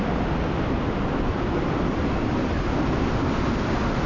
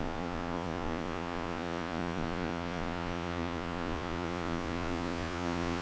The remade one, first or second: second